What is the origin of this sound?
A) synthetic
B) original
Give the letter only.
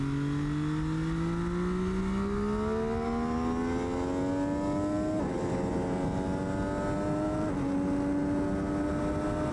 B